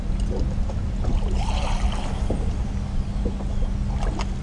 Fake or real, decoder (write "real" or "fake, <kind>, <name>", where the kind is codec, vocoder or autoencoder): real